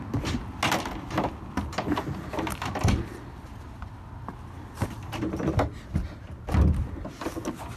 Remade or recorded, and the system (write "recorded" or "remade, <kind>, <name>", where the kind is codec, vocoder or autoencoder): recorded